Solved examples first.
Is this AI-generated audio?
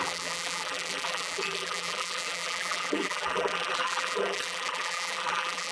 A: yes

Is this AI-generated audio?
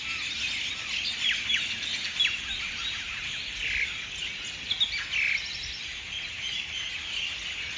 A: no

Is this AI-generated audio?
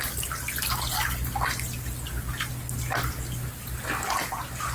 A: no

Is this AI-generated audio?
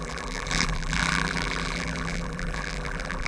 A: yes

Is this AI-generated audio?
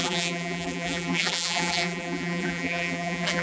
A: yes